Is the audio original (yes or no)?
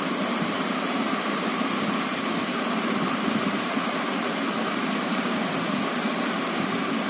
no